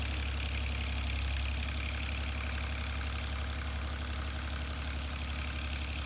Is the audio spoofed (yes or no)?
no